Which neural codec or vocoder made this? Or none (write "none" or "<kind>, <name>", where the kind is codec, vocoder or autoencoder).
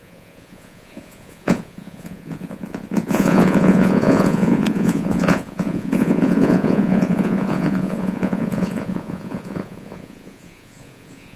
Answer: vocoder, Vocos